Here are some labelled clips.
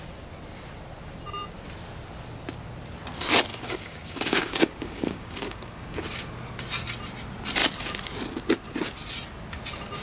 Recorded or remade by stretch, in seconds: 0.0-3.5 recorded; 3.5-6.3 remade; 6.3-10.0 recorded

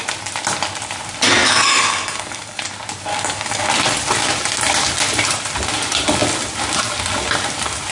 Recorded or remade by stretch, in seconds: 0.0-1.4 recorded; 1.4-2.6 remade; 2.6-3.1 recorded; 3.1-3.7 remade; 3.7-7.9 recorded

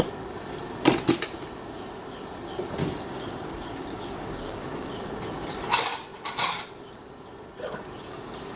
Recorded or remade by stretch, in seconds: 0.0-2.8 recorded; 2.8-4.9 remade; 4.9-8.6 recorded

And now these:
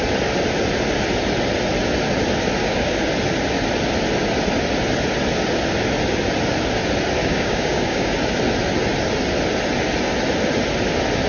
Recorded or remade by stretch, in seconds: 0.0-2.6 recorded; 2.6-3.1 remade; 3.1-7.2 recorded; 7.2-8.1 remade; 8.1-11.3 recorded

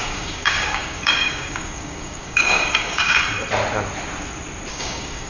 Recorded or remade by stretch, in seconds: 0.0-3.2 remade; 3.2-4.7 recorded; 4.7-5.3 remade

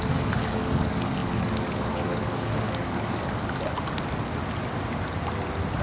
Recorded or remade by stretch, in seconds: 0.0-4.4 remade; 4.4-5.8 recorded

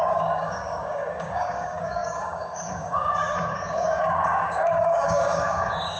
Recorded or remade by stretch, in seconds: 0.0-6.0 remade